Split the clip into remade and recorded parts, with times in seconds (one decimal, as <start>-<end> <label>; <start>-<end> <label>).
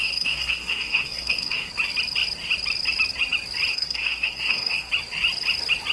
0.0-1.7 remade; 1.7-3.7 recorded; 3.7-4.9 remade; 4.9-5.9 recorded